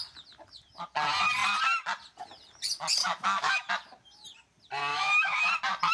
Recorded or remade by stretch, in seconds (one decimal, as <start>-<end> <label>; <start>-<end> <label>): 0.0-3.0 recorded; 3.0-3.7 remade; 3.7-4.9 recorded; 4.9-5.5 remade; 5.5-5.9 recorded